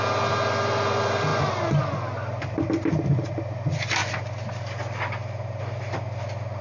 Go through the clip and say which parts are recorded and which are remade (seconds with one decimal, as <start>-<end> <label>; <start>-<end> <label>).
0.0-6.6 recorded